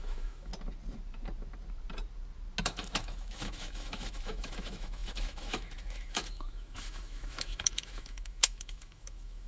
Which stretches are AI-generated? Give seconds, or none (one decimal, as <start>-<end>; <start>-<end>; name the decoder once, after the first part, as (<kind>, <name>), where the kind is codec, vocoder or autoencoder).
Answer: 0.0-0.5 (autoencoder, DAC-VAE); 2.6-9.5